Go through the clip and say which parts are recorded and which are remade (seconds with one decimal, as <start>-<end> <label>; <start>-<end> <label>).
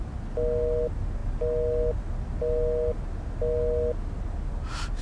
0.0-5.0 recorded